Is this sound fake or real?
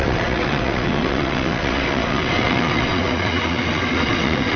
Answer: fake